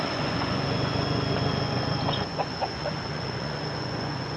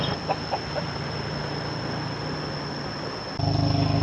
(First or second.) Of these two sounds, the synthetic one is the first